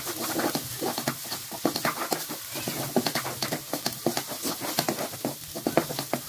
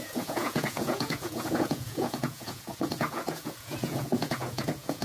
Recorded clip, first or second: first